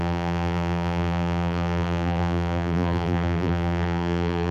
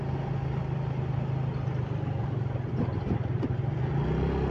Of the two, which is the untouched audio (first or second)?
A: second